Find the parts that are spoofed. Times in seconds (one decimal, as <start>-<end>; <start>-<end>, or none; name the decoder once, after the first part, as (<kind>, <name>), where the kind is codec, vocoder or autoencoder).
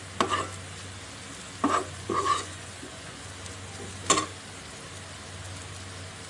1.8-3.3 (vocoder, Vocos)